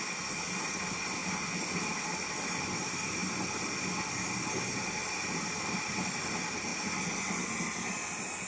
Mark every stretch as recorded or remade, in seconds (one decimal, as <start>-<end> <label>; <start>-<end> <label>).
0.0-1.2 recorded; 1.2-2.3 remade; 2.3-3.2 recorded; 3.2-3.8 remade; 3.8-6.7 recorded; 6.7-7.5 remade; 7.5-8.5 recorded